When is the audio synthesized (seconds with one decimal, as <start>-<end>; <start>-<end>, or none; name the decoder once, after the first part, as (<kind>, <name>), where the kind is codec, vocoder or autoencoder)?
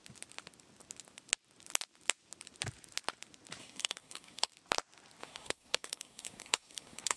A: 3.6-4.5 (codec, SNAC); 5.2-7.2